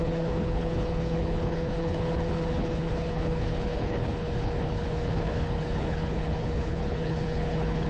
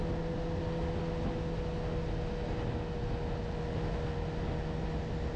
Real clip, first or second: second